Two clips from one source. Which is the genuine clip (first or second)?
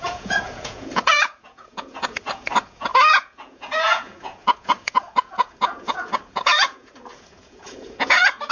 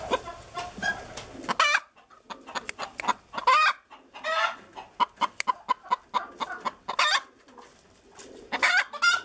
second